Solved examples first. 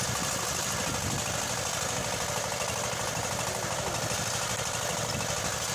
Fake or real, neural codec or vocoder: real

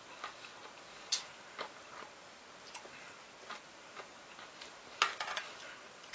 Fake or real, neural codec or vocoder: real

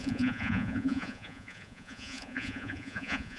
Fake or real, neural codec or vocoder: fake, vocoder, Vocos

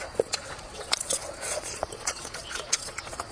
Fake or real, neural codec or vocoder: fake, vocoder, Vocos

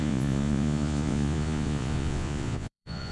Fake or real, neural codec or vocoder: fake, vocoder, Vocos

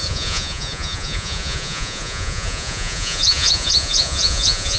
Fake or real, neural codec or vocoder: fake, vocoder, Vocos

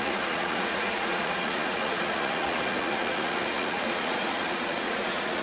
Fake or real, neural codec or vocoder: fake, vocoder, Vocos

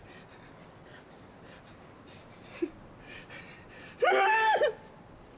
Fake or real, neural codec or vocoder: real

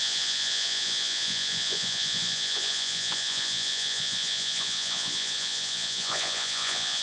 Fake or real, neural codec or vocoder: fake, vocoder, Vocos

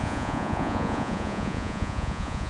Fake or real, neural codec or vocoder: fake, vocoder, Vocos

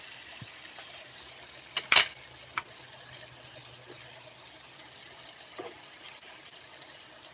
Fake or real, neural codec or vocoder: real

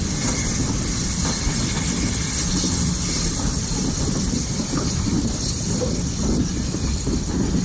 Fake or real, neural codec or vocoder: real